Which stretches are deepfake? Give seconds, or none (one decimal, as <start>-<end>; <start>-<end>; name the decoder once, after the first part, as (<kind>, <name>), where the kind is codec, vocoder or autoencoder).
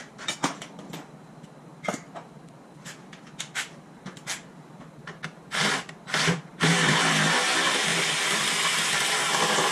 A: none